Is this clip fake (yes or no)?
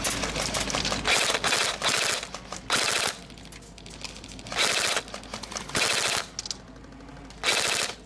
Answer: no